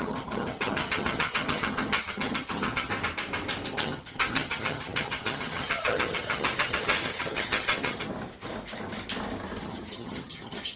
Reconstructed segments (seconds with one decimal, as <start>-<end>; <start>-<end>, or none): 0.0-2.9; 3.7-8.1; 9.6-10.8